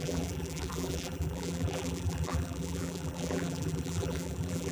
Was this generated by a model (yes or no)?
yes